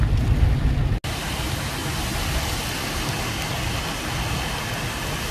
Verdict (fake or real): real